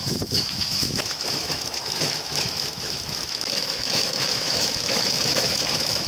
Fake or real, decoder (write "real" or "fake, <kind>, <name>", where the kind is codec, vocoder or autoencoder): fake, autoencoder, DAC-VAE